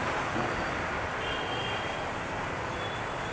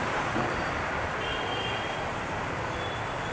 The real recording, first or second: first